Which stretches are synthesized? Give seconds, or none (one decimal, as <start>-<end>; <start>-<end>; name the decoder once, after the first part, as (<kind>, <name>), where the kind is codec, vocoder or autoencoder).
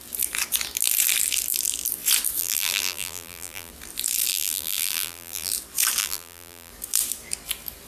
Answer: 2.4-3.7 (vocoder, BigVGAN v2); 4.3-5.5; 6.0-6.7